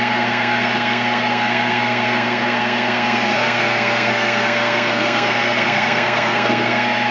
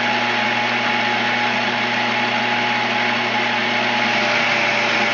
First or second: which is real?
second